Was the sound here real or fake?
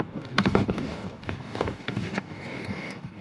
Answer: fake